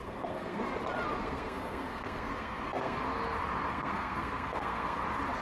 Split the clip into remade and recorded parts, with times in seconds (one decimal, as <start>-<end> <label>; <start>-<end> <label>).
0.0-0.6 remade; 0.6-1.2 recorded; 1.2-3.0 remade; 3.0-3.7 recorded; 3.7-5.0 remade; 5.0-5.4 recorded